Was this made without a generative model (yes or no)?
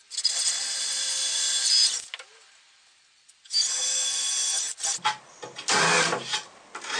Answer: yes